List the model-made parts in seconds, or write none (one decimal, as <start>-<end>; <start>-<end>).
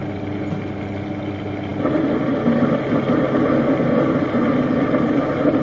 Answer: none